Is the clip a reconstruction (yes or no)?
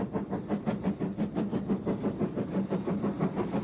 no